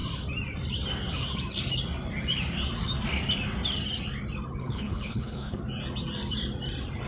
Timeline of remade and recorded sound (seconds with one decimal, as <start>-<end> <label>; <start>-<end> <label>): 0.0-4.6 recorded; 4.6-5.6 remade; 5.6-7.1 recorded

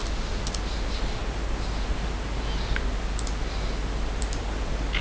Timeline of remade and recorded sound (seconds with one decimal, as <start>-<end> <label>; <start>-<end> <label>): 0.0-5.0 recorded

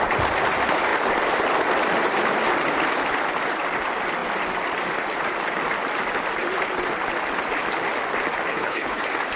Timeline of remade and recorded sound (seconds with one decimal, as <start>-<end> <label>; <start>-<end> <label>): 0.0-8.5 recorded; 8.5-9.0 remade; 9.0-9.4 recorded

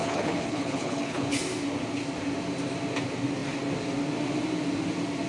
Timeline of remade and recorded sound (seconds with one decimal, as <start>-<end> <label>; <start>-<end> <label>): 0.0-1.4 remade; 1.4-5.3 recorded

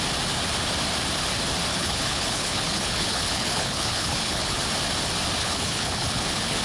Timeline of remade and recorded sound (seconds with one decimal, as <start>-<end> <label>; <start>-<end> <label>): 0.0-1.7 recorded; 1.7-4.6 remade; 4.6-5.4 recorded; 5.4-6.6 remade